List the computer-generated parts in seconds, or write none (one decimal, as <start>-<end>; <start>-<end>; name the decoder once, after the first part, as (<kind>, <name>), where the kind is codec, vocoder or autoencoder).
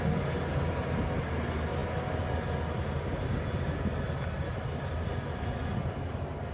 none